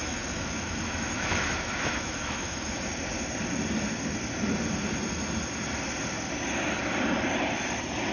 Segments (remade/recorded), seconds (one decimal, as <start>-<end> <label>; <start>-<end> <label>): 0.0-2.9 remade; 2.9-8.1 recorded

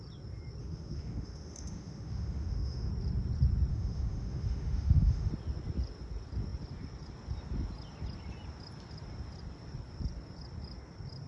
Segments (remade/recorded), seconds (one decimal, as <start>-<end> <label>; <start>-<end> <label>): 0.0-0.6 recorded; 0.6-2.9 remade; 2.9-3.7 recorded; 3.7-5.3 remade; 5.3-11.3 recorded

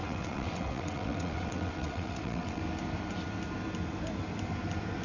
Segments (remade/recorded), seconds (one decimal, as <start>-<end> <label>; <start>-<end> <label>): 0.0-2.6 remade; 2.6-5.0 recorded

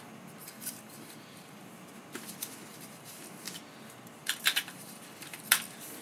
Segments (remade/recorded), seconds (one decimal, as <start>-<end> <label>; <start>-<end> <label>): 0.0-0.4 recorded; 0.4-1.6 remade; 1.6-2.7 recorded; 2.7-3.2 remade; 3.2-4.2 recorded; 4.2-5.6 remade; 5.6-6.0 recorded